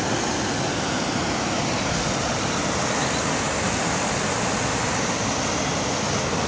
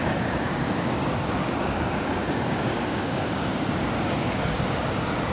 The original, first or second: first